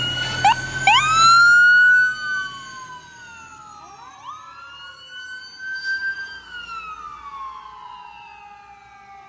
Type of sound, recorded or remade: recorded